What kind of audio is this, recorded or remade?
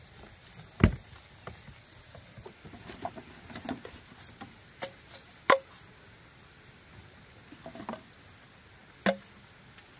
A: recorded